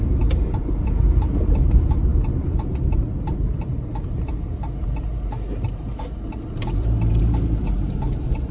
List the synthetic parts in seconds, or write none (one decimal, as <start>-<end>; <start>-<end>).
0.0-8.5